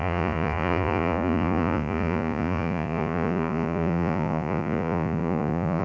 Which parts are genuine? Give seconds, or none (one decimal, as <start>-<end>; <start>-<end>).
none